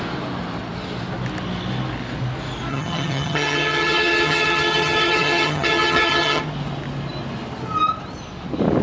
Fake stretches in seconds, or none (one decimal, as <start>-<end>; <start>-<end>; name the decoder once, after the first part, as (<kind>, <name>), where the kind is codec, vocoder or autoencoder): 2.7-6.4 (vocoder, HiFi-GAN)

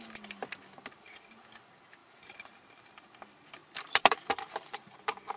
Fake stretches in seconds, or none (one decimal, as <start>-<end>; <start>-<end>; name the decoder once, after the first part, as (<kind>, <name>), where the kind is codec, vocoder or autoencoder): 2.0-3.2 (vocoder, BigVGAN v2); 3.6-4.9

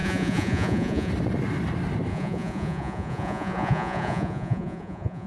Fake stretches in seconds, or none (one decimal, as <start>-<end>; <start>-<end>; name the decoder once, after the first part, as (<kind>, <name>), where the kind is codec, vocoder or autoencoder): 0.0-1.1 (vocoder, Vocos); 2.1-5.3

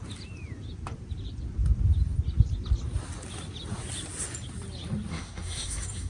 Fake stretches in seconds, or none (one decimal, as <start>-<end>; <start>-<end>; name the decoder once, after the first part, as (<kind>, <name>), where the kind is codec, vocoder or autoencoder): 5.1-6.1 (codec, SNAC)